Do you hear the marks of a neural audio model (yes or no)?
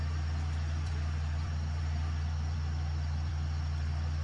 no